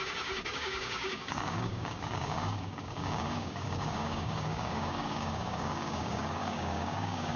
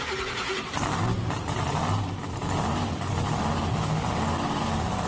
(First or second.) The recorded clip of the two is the second